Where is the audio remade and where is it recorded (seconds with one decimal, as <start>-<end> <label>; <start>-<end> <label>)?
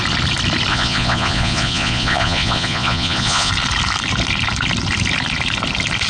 0.0-0.7 recorded; 0.7-3.5 remade; 3.5-6.1 recorded